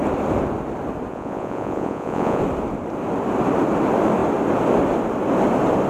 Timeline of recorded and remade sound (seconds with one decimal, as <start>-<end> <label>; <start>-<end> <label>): 0.0-1.1 recorded; 1.1-2.4 remade; 2.4-5.9 recorded